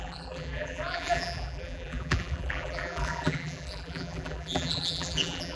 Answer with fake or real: fake